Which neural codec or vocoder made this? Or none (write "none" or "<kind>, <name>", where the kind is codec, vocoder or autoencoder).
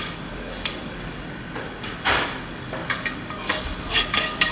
codec, DAC